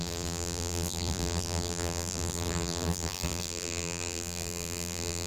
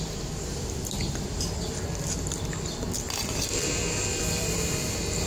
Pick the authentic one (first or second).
second